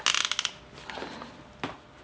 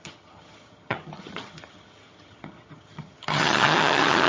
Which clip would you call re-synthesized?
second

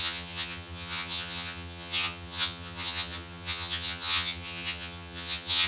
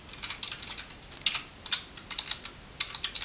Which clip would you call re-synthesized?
first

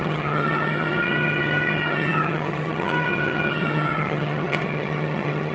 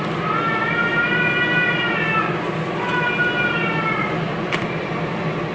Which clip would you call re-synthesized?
first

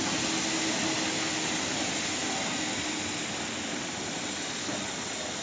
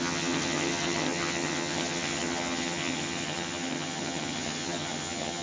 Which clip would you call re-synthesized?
second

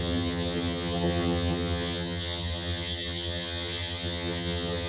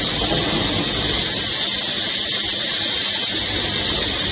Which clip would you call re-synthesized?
first